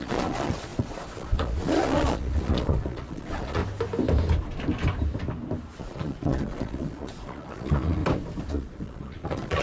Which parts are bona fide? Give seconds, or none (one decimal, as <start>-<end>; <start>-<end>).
3.6-5.8; 8.0-8.5

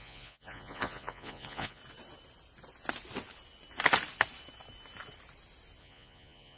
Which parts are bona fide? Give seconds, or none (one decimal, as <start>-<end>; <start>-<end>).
1.8-5.8

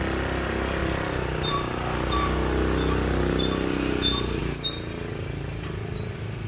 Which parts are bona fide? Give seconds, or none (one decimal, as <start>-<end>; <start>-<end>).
0.0-6.5

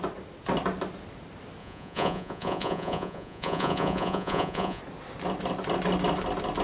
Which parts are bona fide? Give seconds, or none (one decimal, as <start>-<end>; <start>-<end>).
0.0-1.6; 4.8-6.6

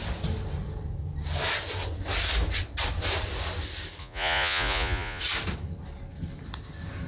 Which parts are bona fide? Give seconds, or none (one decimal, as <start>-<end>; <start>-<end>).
0.0-4.0; 5.2-7.1

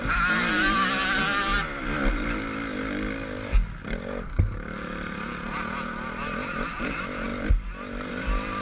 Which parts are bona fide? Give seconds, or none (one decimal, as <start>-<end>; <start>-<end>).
0.0-8.6

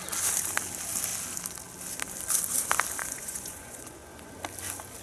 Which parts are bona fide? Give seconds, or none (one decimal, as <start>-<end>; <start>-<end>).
0.0-3.0; 4.3-5.0

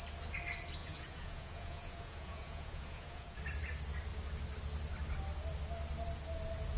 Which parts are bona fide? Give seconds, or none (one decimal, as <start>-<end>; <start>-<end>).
0.0-0.8; 3.4-6.8